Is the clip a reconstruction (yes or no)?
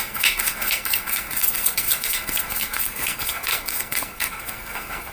yes